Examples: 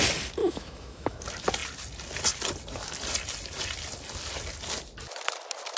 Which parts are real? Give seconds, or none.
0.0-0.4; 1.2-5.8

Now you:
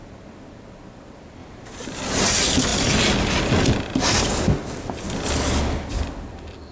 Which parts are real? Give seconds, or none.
0.0-6.7

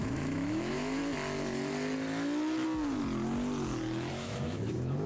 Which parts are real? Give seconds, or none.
1.0-4.1

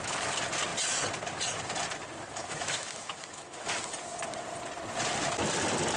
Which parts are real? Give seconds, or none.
0.0-2.4; 3.8-6.0

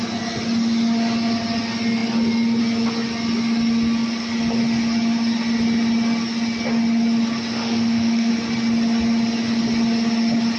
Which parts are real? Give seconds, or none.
0.0-7.5; 8.3-10.6